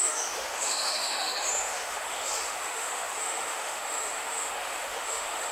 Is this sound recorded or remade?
remade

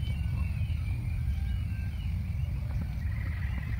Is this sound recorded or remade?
recorded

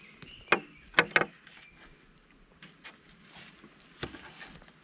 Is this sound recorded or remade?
recorded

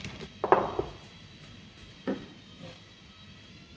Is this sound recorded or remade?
recorded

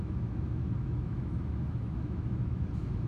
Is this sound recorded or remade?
remade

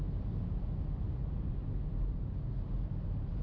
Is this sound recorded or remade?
recorded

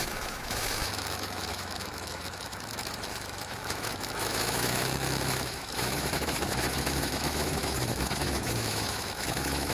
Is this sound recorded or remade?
remade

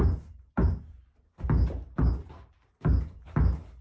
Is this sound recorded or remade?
recorded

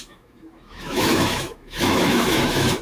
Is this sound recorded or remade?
remade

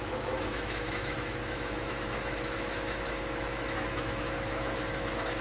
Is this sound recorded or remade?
remade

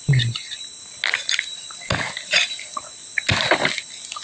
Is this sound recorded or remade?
recorded